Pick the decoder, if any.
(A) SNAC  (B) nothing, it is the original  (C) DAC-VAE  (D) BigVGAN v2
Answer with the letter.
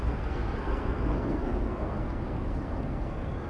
A